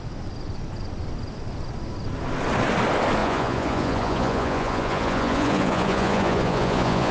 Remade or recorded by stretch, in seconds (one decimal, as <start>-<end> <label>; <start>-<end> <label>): 0.0-3.2 recorded; 3.2-7.1 remade